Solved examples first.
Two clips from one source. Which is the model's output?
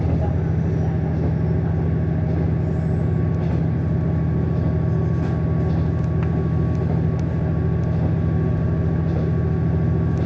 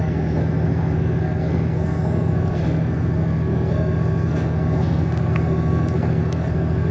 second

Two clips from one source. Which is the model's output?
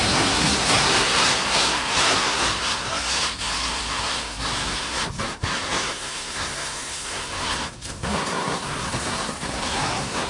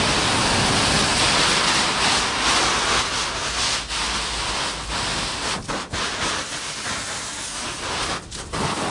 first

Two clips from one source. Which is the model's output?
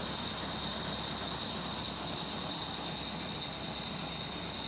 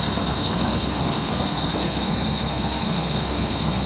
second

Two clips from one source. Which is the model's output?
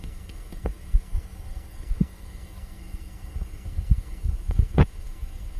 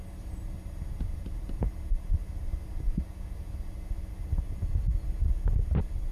first